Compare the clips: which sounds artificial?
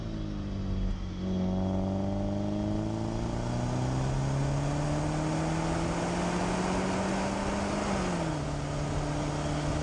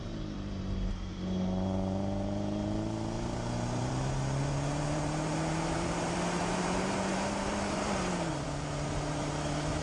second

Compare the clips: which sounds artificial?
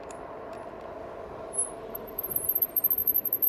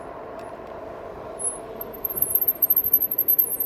second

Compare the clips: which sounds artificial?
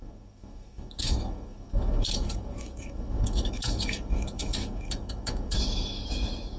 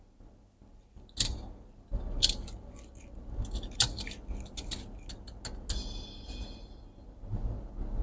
first